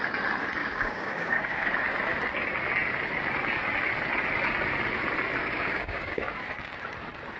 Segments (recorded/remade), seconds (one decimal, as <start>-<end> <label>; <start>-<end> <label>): 0.0-0.6 recorded; 0.6-1.7 remade; 1.7-5.4 recorded; 5.4-6.4 remade; 6.4-7.4 recorded